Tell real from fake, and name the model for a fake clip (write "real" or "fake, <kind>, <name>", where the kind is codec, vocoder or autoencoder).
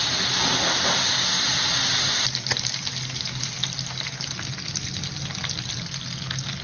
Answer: real